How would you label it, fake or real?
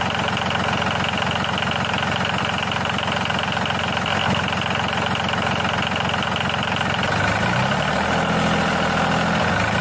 real